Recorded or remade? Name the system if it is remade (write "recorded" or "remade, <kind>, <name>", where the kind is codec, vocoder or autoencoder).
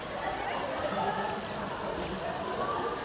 recorded